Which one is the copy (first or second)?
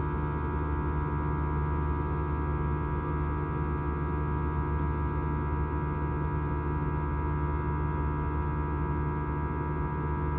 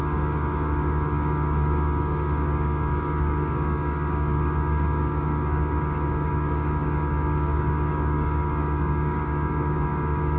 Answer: second